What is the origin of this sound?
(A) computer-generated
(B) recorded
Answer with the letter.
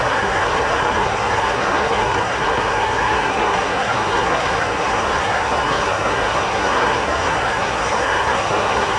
A